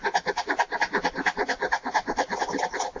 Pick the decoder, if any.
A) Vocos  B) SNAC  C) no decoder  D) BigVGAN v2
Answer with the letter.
C